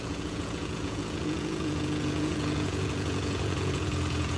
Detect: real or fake fake